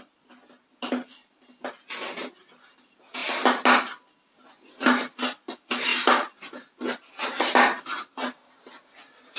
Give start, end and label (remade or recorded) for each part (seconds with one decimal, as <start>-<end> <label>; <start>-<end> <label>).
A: 0.0-9.4 recorded